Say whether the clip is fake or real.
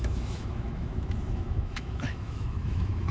fake